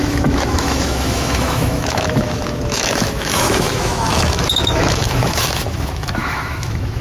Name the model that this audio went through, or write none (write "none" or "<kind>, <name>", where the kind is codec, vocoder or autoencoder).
autoencoder, DAC-VAE